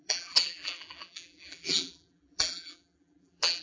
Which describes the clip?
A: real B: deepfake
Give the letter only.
B